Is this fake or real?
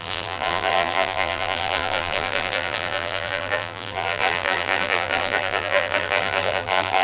fake